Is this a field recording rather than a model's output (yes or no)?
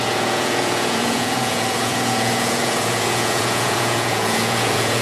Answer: no